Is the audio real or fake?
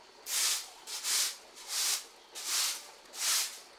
real